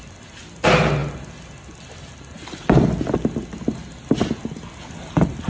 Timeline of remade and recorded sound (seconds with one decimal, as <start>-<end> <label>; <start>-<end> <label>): 0.0-5.5 recorded

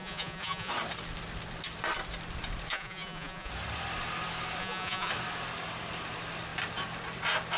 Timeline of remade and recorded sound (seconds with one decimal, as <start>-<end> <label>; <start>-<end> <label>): 0.0-0.7 remade; 0.7-2.7 recorded; 2.7-3.5 remade; 3.5-4.6 recorded; 4.6-5.1 remade; 5.1-7.6 recorded

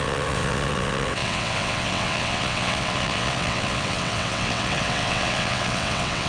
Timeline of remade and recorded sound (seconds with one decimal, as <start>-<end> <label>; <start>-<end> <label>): 0.0-6.3 remade

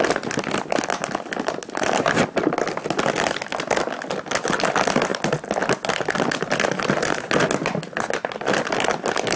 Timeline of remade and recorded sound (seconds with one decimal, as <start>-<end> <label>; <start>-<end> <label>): 0.0-9.4 recorded

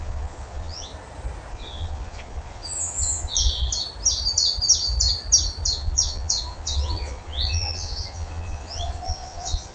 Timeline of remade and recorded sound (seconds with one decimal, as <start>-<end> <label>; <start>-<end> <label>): 0.0-0.9 remade; 0.9-1.5 recorded; 1.5-3.7 remade; 3.7-5.7 recorded; 5.7-9.7 remade

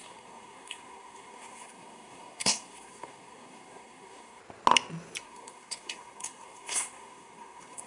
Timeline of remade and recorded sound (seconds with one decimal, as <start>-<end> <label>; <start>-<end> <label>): 0.0-4.4 remade; 4.4-5.2 recorded; 5.2-7.9 remade